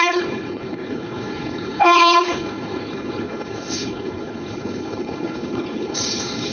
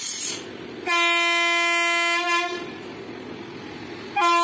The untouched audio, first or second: second